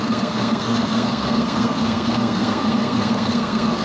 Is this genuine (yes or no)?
no